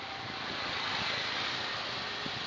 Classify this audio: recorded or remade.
recorded